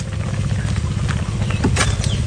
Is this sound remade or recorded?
recorded